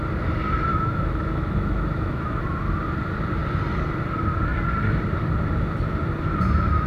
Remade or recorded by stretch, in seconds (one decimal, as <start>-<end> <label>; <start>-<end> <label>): 0.0-0.7 recorded; 0.7-2.4 remade; 2.4-6.9 recorded